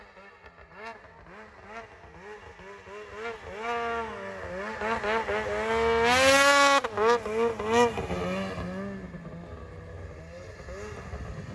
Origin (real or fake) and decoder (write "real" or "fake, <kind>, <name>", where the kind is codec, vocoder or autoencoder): real